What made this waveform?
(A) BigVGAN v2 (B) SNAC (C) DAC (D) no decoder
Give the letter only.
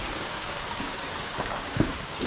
C